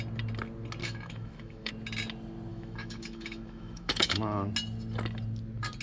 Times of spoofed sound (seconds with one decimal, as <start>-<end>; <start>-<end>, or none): 0.8-1.7; 2.5-4.5